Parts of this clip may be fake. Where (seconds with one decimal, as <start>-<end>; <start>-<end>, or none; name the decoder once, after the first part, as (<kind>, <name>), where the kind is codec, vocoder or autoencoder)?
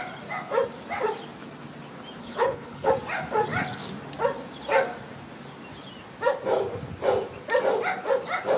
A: 2.2-2.9 (codec, HILCodec)